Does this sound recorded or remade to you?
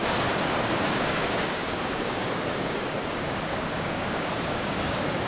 remade